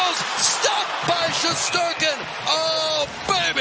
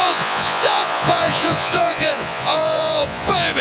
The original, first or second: first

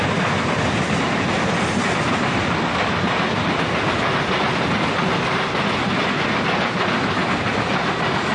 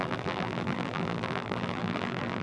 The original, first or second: first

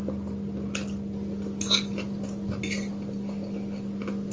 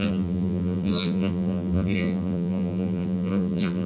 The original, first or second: first